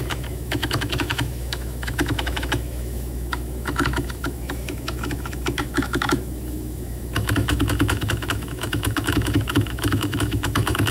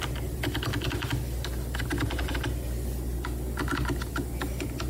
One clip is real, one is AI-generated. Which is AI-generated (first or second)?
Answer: first